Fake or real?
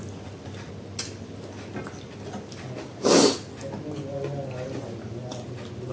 real